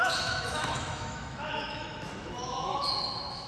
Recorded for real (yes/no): no